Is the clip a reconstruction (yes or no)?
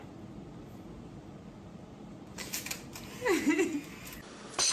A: no